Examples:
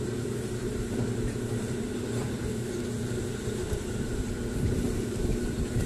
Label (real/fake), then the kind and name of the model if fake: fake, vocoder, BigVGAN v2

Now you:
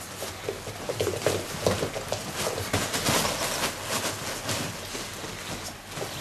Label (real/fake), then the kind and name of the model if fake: real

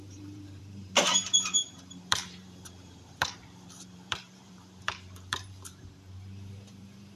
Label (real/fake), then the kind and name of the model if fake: fake, vocoder, BigVGAN v2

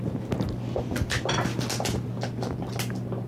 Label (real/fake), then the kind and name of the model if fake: real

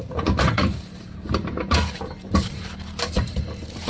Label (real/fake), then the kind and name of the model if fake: fake, vocoder, BigVGAN v2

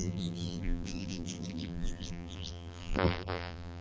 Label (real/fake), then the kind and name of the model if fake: fake, vocoder, BigVGAN v2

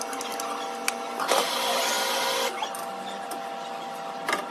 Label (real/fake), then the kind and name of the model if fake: real